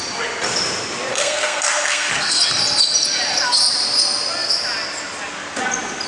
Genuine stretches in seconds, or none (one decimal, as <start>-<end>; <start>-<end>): 0.0-1.1; 2.4-6.1